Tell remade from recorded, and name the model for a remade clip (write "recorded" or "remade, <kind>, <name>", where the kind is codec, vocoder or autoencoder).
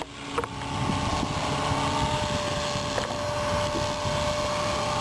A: recorded